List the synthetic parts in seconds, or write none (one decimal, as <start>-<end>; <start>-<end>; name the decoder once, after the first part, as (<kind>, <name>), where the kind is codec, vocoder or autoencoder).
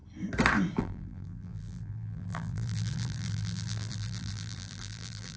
0.8-5.4 (vocoder, BigVGAN v2)